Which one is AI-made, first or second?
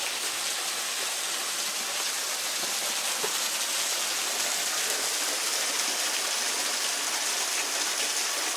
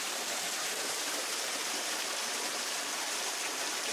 second